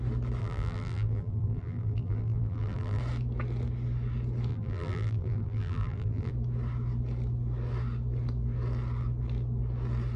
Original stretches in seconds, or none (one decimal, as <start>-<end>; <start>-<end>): 0.0-0.4; 3.0-4.5; 6.3-10.2

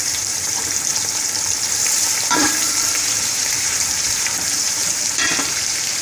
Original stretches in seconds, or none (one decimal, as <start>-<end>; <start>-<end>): 0.9-1.6

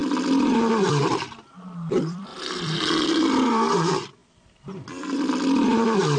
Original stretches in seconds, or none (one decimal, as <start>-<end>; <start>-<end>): none

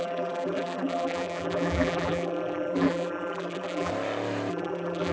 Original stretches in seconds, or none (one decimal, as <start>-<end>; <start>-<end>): 3.9-4.5